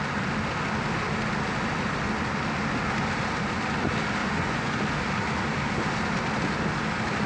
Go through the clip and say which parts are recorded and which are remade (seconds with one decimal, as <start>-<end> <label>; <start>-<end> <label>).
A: 0.0-4.2 recorded; 4.2-4.8 remade; 4.8-7.3 recorded